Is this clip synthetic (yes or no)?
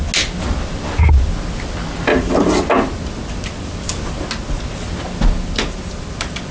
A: no